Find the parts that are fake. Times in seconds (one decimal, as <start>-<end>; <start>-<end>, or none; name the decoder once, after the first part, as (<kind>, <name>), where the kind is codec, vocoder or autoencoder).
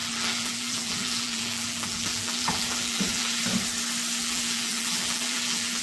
0.0-3.4 (vocoder, BigVGAN v2); 4.2-5.8